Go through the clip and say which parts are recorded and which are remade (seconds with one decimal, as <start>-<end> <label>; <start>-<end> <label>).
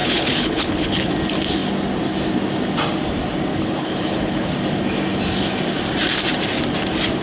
0.0-1.1 remade; 1.1-3.5 recorded; 3.5-4.5 remade; 4.5-7.2 recorded